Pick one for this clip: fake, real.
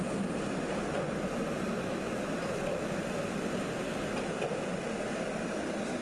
real